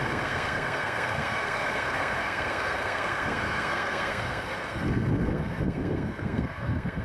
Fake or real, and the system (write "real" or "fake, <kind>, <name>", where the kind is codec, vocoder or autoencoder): fake, codec, SNAC